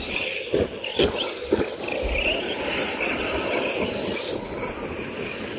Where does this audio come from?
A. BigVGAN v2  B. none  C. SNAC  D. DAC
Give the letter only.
B